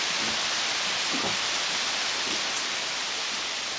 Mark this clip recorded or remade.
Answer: recorded